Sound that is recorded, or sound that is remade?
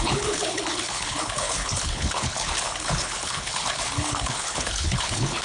remade